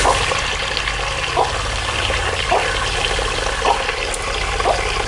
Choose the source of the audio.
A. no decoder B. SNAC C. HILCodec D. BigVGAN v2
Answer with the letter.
A